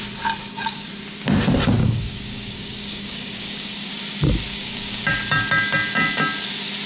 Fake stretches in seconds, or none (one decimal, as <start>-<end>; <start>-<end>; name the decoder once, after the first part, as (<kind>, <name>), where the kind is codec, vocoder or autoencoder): 0.4-0.9 (codec, DAC); 1.8-3.9; 4.5-5.0